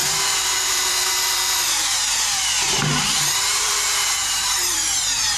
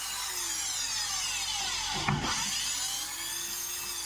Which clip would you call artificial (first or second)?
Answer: first